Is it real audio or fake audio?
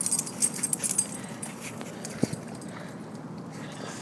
real